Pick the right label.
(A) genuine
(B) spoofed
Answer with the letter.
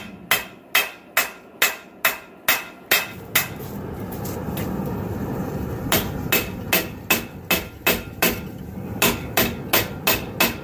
A